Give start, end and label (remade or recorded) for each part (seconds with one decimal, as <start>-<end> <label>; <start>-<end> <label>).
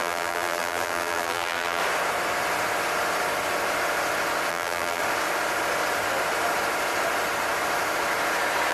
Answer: 0.0-1.8 remade; 1.8-4.5 recorded; 4.5-5.0 remade; 5.0-8.7 recorded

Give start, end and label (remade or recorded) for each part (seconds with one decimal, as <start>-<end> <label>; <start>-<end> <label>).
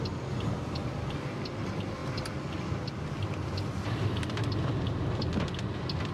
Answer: 0.0-6.1 recorded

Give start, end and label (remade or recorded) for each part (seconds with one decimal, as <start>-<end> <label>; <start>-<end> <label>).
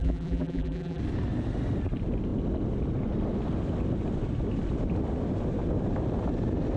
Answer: 0.0-1.0 remade; 1.0-6.8 recorded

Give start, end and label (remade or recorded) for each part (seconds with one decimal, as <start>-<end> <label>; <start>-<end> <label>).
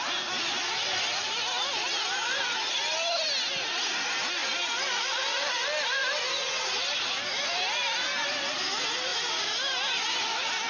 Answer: 0.0-4.4 recorded; 4.4-5.2 remade; 5.2-10.7 recorded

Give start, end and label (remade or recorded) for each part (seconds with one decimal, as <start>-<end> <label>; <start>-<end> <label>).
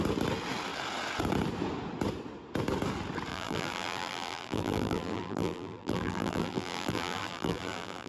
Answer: 0.0-3.3 recorded; 3.3-8.1 remade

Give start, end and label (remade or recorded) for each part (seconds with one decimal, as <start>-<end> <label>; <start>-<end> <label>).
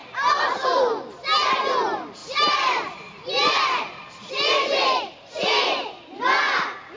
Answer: 0.0-0.8 remade; 0.8-2.2 recorded; 2.2-6.2 remade; 6.2-7.0 recorded